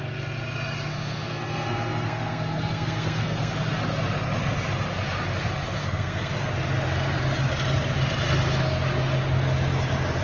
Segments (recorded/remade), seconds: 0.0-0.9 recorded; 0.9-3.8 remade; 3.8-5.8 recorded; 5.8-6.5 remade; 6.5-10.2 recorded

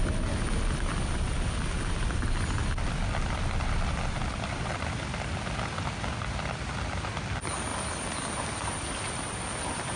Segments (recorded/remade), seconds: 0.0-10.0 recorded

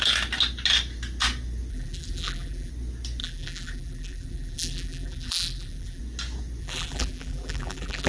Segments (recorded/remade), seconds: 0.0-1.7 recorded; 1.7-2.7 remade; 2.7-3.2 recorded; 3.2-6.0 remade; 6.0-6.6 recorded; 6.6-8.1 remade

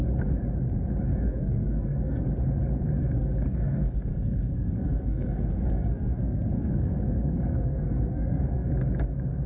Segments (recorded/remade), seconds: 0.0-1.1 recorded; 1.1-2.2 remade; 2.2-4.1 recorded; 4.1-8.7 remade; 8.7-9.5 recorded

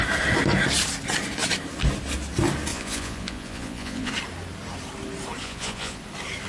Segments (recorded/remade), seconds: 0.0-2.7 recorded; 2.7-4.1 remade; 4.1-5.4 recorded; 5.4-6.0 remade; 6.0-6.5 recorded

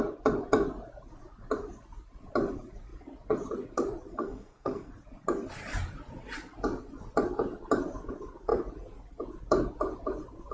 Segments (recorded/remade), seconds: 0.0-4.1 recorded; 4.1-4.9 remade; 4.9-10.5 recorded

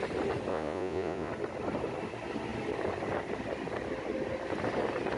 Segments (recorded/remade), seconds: 0.0-0.5 recorded; 0.5-1.3 remade; 1.3-5.2 recorded

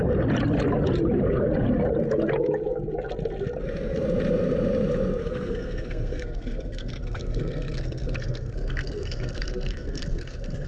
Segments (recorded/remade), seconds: 0.0-5.2 recorded; 5.2-10.7 remade